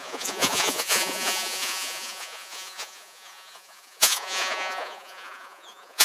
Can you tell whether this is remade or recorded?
remade